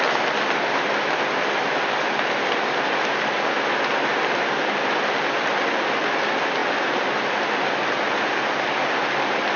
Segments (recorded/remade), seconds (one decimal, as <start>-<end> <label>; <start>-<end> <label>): 0.0-6.6 remade; 6.6-7.7 recorded; 7.7-9.6 remade